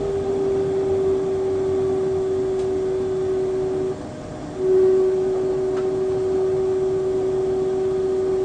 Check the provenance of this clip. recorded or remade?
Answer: recorded